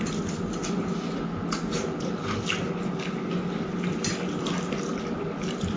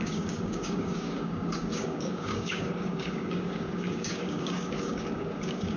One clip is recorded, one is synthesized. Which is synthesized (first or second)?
second